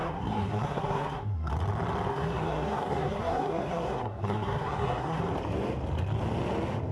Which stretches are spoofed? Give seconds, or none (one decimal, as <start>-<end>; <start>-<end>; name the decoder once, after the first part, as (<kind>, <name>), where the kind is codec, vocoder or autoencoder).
0.0-1.5 (codec, SNAC); 2.1-5.2